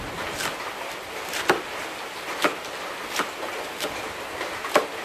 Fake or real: real